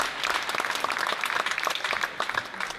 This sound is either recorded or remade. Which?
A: recorded